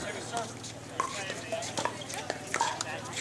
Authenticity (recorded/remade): recorded